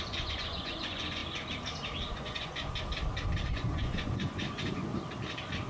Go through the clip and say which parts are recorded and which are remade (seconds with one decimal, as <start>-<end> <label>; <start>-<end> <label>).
0.0-1.2 remade; 1.2-2.1 recorded; 2.1-2.6 remade; 2.6-3.5 recorded; 3.5-4.9 remade; 4.9-5.7 recorded